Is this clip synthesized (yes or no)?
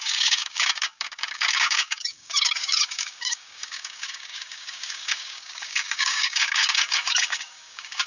yes